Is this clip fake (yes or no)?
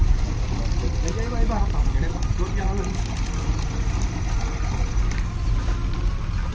no